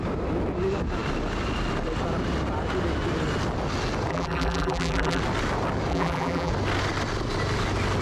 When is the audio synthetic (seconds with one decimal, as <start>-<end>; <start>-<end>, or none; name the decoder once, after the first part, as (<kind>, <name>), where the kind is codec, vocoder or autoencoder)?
4.1-5.2 (vocoder, BigVGAN v2); 5.9-6.5